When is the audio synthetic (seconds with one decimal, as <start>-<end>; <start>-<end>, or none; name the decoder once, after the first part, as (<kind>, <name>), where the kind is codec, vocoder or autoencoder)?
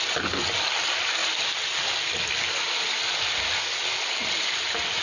none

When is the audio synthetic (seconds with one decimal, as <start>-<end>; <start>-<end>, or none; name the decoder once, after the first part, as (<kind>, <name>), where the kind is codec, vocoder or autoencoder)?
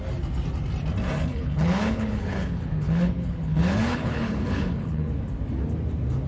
1.3-5.1 (codec, HILCodec)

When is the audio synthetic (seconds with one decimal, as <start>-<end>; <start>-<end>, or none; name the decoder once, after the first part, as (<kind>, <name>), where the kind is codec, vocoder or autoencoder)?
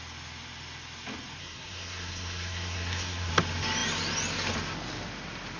1.4-3.3 (codec, SNAC)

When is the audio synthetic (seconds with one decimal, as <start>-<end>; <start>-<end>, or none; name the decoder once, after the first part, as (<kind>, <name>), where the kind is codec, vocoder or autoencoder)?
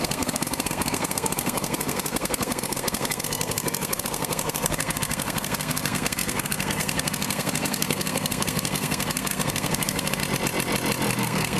0.0-10.2 (codec, SNAC); 11.2-11.6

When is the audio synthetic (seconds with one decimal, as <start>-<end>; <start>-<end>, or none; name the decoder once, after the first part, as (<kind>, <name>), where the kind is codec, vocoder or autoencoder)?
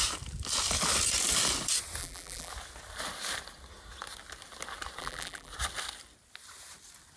2.0-2.5 (vocoder, BigVGAN v2); 5.0-5.5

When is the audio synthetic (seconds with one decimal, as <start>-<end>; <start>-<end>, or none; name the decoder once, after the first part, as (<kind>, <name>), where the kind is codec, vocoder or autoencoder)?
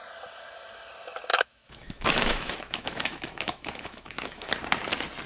1.3-4.5 (autoencoder, DAC-VAE)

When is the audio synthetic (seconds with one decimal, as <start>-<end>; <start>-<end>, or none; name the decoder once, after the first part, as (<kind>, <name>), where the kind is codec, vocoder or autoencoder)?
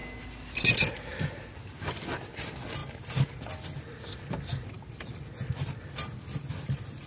none